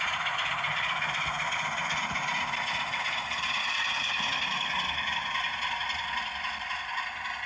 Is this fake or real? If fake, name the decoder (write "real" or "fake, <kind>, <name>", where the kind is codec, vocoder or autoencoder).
real